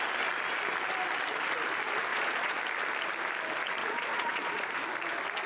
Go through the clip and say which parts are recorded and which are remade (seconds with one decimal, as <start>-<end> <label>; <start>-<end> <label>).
0.0-2.1 recorded; 2.1-2.6 remade; 2.6-3.8 recorded; 3.8-4.7 remade; 4.7-5.5 recorded